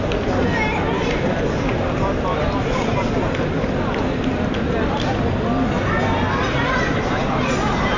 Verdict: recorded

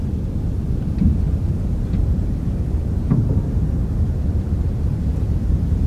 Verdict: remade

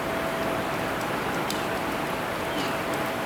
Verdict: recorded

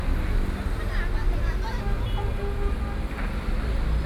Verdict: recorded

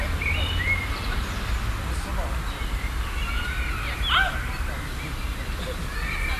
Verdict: recorded